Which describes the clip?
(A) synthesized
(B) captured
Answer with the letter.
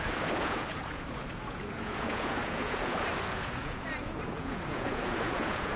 A